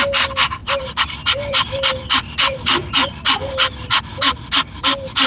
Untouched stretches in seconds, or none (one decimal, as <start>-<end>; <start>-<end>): 0.0-0.6; 2.9-5.3